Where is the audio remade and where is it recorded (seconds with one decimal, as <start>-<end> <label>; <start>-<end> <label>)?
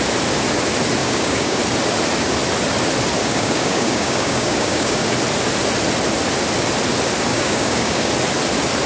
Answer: 0.0-1.0 recorded; 1.0-1.6 remade; 1.6-3.2 recorded; 3.2-5.1 remade; 5.1-7.3 recorded; 7.3-8.1 remade; 8.1-8.9 recorded